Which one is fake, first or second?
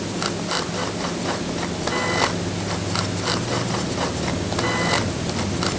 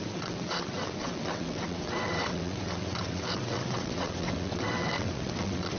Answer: second